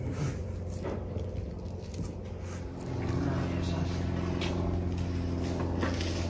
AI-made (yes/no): no